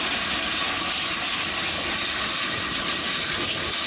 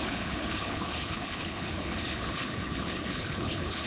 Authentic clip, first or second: first